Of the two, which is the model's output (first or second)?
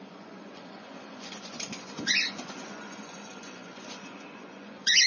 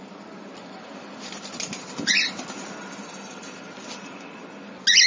first